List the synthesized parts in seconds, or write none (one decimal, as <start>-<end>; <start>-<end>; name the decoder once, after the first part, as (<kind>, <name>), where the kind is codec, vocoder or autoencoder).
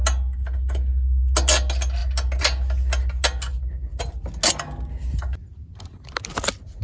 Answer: none